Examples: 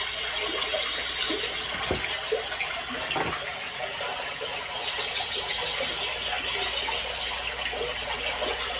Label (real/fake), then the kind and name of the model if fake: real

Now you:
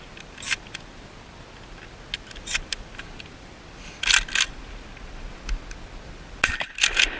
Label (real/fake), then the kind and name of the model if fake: real